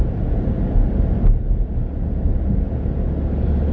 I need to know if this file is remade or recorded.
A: recorded